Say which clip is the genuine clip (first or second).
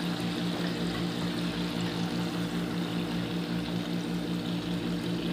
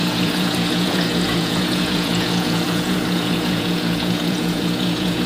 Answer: first